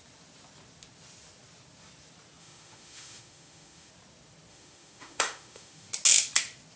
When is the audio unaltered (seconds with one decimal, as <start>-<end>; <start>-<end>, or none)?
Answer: 0.0-2.4; 3.9-4.5; 5.9-6.8